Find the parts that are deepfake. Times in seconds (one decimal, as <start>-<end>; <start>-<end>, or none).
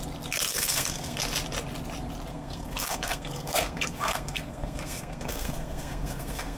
0.5-1.2; 2.3-6.6